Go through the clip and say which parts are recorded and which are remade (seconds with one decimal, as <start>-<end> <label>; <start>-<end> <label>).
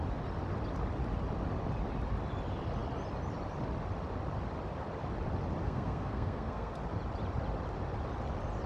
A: 0.0-5.6 recorded; 5.6-6.7 remade; 6.7-8.7 recorded